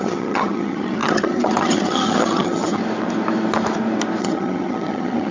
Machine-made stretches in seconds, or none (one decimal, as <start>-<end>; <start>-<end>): 0.0-2.8; 4.2-5.3